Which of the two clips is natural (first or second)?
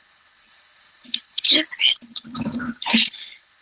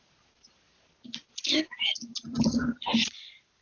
second